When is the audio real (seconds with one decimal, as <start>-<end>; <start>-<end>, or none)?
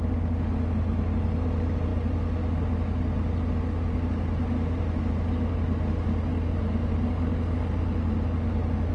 0.0-8.9